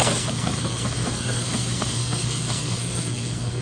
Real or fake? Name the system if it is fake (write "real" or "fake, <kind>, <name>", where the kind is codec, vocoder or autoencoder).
fake, codec, SNAC